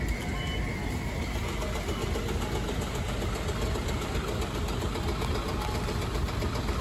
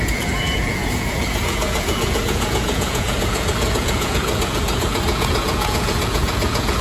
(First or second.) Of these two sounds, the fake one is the second